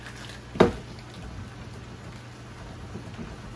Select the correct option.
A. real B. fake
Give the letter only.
A